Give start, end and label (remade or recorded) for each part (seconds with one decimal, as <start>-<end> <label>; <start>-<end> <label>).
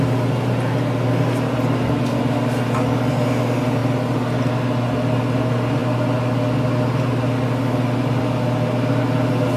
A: 0.0-9.6 recorded